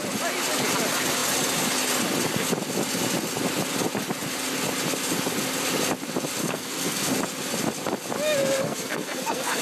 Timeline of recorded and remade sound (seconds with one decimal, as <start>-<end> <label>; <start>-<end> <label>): 0.0-6.4 recorded; 6.4-7.1 remade; 7.1-8.4 recorded; 8.4-9.6 remade